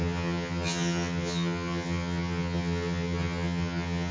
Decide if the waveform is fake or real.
fake